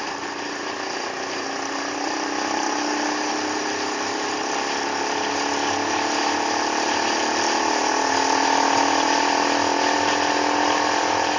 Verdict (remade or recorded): recorded